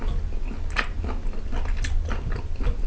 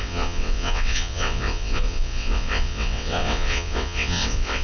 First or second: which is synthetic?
second